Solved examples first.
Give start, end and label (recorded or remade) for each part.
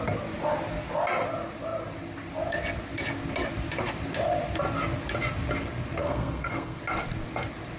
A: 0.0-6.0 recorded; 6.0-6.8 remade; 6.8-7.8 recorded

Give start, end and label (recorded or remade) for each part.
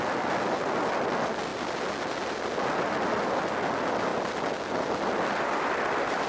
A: 0.0-6.3 recorded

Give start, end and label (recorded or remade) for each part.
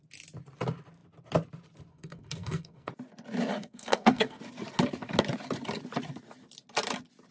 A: 0.0-1.9 recorded; 1.9-2.9 remade; 2.9-3.5 recorded; 3.5-4.4 remade; 4.4-7.3 recorded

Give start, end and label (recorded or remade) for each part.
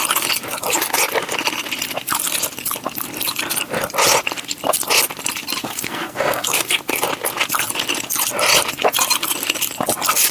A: 0.0-5.6 recorded; 5.6-6.8 remade; 6.8-10.3 recorded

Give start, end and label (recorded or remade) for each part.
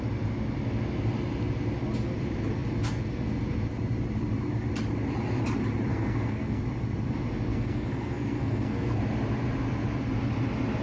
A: 0.0-5.9 recorded; 5.9-6.6 remade; 6.6-7.5 recorded; 7.5-9.0 remade; 9.0-10.8 recorded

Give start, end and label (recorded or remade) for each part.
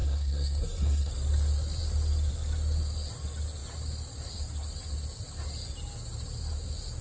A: 0.0-1.1 remade; 1.1-7.0 recorded